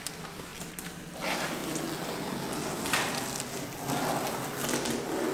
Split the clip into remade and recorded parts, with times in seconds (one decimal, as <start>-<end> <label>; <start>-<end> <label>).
0.0-5.3 recorded